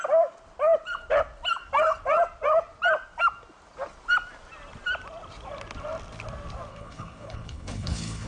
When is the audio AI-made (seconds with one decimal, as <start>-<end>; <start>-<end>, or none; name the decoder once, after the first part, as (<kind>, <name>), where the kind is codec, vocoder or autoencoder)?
6.7-8.3 (codec, HILCodec)